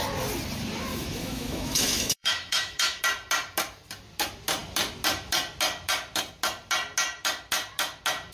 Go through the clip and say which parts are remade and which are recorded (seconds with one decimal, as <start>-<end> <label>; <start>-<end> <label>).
0.0-0.9 recorded; 0.9-3.0 remade; 3.0-8.3 recorded